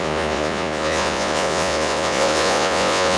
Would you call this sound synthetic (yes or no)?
yes